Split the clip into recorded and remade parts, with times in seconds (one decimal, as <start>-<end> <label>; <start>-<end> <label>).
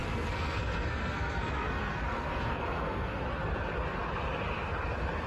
0.0-3.2 remade; 3.2-5.3 recorded